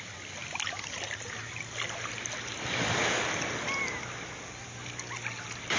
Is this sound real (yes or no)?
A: yes